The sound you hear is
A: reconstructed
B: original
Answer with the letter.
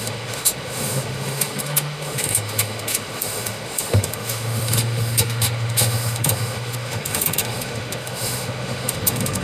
A